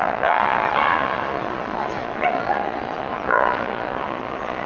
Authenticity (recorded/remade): remade